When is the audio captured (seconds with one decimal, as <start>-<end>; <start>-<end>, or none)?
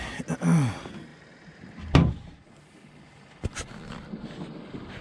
0.0-5.0